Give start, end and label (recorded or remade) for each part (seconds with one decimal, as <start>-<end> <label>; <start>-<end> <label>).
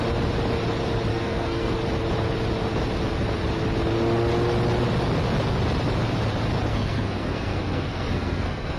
0.0-1.1 recorded; 1.1-1.7 remade; 1.7-6.7 recorded; 6.7-8.8 remade